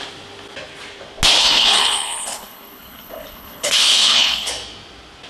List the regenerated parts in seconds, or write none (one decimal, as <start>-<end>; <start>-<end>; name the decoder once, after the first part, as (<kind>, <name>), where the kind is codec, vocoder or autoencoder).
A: 1.4-4.5 (codec, HILCodec)